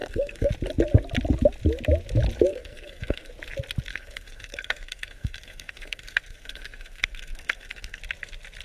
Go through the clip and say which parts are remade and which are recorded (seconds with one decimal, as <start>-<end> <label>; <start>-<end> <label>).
0.0-0.5 remade; 0.5-2.5 recorded; 2.5-3.3 remade; 3.3-3.9 recorded; 3.9-8.0 remade; 8.0-8.6 recorded